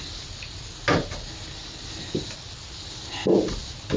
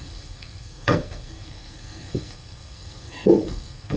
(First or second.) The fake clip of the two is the second